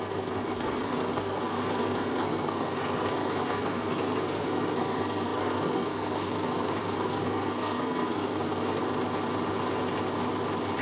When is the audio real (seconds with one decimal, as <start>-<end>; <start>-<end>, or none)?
8.8-10.8